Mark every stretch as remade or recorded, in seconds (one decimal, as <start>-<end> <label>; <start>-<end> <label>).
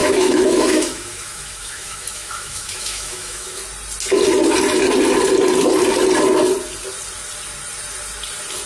0.0-3.6 remade; 3.6-8.7 recorded